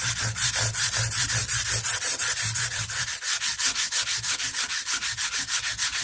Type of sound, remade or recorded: recorded